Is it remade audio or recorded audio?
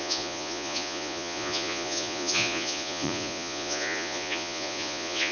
remade